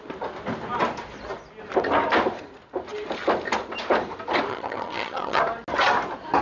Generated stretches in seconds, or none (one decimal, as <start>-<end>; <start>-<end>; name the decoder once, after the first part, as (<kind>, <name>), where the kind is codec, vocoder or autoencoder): 4.5-5.4 (vocoder, HiFi-GAN)